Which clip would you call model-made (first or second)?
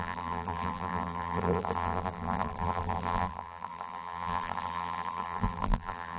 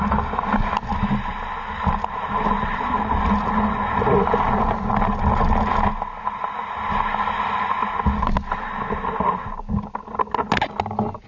first